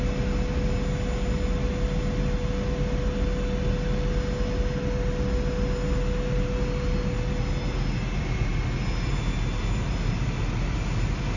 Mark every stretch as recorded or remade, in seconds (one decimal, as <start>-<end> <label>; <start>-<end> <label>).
0.0-11.4 recorded